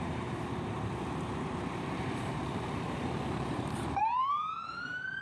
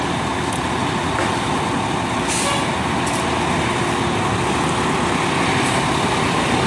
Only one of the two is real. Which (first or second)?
second